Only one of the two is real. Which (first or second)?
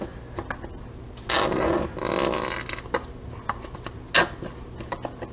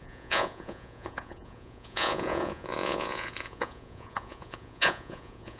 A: first